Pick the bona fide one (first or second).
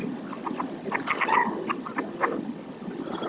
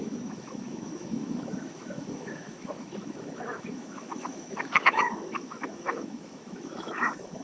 first